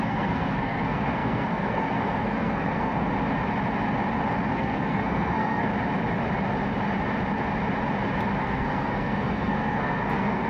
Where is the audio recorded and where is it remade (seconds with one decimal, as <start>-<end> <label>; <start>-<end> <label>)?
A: 0.0-3.1 remade; 3.1-4.5 recorded; 4.5-5.7 remade; 5.7-8.4 recorded; 8.4-10.5 remade